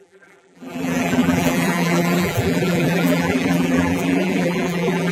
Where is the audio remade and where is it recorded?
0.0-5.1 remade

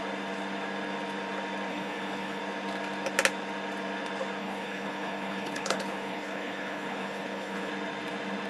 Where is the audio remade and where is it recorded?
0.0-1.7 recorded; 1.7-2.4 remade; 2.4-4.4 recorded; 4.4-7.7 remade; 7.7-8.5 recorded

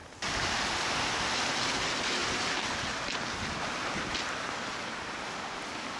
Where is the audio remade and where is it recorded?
0.0-6.0 recorded